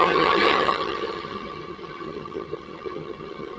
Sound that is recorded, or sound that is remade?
remade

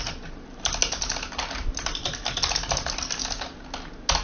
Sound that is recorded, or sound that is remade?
recorded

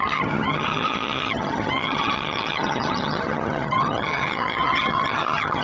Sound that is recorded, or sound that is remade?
remade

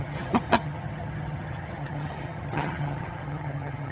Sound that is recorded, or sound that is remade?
remade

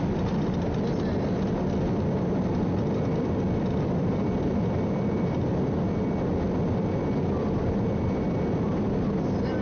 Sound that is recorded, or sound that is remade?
recorded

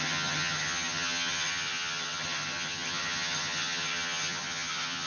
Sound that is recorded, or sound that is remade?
remade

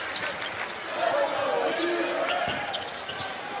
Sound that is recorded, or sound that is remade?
recorded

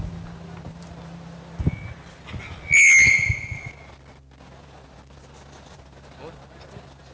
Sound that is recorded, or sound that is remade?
recorded